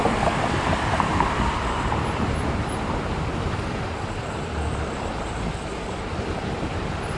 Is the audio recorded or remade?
remade